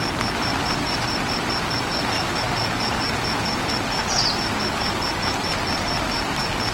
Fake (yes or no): no